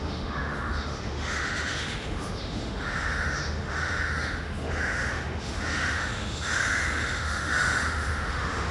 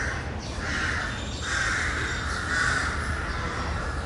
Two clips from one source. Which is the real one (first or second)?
second